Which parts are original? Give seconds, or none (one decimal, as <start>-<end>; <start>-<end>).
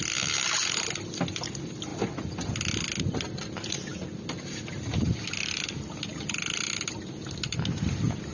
0.0-8.3